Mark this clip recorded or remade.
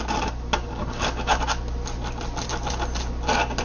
recorded